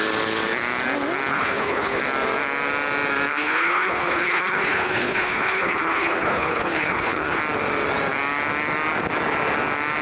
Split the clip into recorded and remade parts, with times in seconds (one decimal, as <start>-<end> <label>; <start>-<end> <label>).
0.0-1.3 recorded; 1.3-2.0 remade; 2.0-3.3 recorded; 3.3-7.4 remade; 7.4-10.0 recorded